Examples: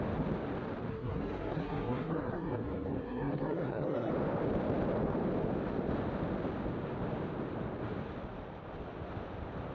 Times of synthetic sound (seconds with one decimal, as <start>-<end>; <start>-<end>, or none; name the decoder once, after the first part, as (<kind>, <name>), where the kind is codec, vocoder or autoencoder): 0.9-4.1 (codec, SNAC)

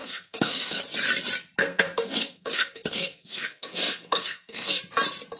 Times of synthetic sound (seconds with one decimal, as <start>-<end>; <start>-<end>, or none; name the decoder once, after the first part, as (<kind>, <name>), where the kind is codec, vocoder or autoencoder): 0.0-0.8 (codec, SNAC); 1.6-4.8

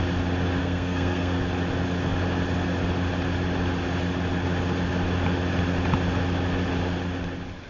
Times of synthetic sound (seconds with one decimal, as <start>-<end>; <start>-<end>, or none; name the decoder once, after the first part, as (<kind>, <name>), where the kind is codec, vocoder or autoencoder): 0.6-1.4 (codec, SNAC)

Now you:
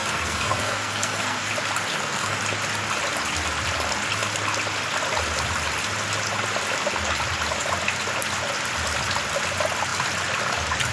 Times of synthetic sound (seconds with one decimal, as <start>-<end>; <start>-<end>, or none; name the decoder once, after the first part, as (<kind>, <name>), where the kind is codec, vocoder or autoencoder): 0.0-1.5 (codec, SNAC); 1.9-2.4

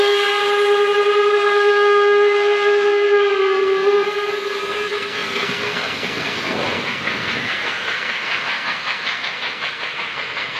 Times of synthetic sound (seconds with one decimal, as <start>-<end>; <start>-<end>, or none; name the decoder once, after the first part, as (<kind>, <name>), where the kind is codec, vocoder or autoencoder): 0.0-0.4 (codec, SNAC); 1.3-10.6

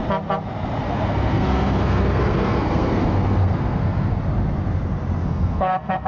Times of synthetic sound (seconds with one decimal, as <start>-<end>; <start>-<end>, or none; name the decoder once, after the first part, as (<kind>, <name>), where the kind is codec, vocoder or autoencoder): 0.8-4.2 (codec, SNAC); 5.3-6.1